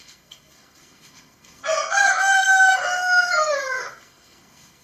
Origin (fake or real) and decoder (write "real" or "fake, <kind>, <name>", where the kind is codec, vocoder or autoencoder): fake, codec, SNAC